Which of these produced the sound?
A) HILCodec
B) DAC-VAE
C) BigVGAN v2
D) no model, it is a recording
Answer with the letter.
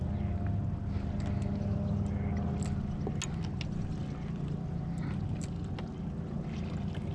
D